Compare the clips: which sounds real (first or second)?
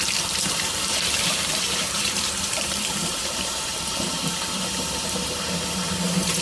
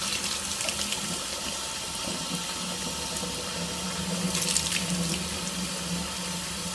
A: second